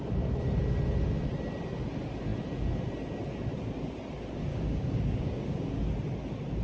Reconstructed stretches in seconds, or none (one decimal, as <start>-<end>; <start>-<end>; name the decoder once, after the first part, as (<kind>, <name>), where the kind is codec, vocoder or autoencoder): 4.5-5.8 (codec, DAC)